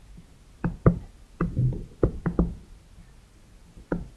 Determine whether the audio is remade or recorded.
recorded